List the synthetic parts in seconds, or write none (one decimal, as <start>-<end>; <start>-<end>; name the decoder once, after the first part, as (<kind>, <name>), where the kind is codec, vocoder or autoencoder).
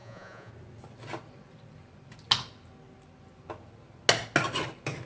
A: 0.0-0.5 (vocoder, Vocos)